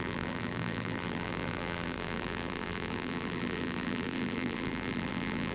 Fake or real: fake